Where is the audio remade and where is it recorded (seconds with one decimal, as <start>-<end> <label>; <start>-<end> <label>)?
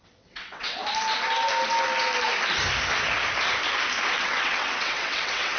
0.0-0.8 remade; 0.8-4.2 recorded; 4.2-5.6 remade